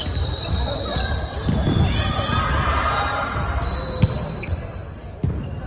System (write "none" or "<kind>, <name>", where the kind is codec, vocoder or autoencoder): vocoder, BigVGAN v2